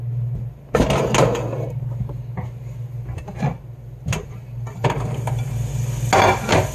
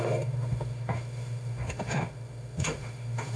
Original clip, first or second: first